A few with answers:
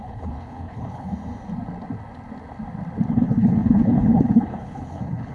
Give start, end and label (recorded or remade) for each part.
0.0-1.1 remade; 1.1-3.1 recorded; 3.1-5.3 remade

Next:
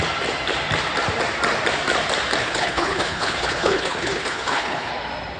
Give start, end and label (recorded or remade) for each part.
0.0-2.4 recorded; 2.4-4.9 remade; 4.9-5.4 recorded

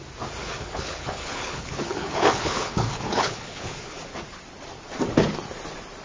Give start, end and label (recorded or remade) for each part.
0.0-0.4 recorded; 0.4-4.0 remade; 4.0-6.0 recorded

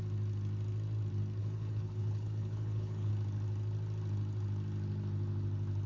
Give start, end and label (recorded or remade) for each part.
0.0-1.4 recorded; 1.4-3.1 remade; 3.1-5.9 recorded

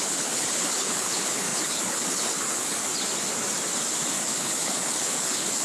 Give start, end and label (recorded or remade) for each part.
0.0-2.9 remade; 2.9-4.4 recorded; 4.4-5.6 remade

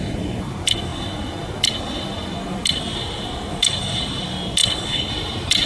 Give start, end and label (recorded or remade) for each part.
0.0-4.6 recorded; 4.6-5.1 remade; 5.1-5.7 recorded

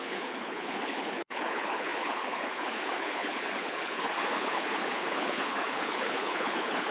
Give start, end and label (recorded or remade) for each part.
0.0-6.9 remade